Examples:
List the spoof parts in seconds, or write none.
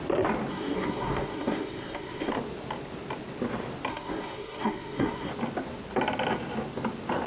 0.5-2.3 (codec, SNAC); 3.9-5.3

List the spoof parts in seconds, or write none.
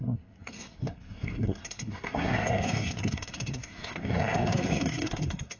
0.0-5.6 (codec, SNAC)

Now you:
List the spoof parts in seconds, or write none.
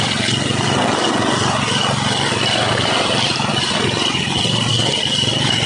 none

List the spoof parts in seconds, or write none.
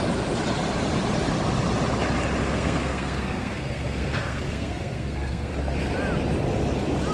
2.4-5.5 (codec, SNAC)